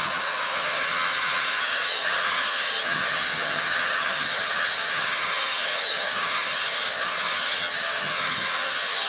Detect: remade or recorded remade